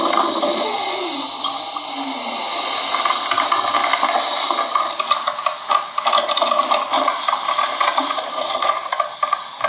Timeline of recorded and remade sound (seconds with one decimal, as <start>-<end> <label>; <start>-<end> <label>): 0.0-8.3 recorded; 8.3-9.0 remade; 9.0-9.7 recorded